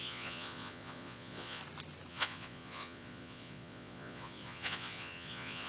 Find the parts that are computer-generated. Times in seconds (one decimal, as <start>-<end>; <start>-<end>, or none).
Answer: 0.0-1.6; 2.1-5.7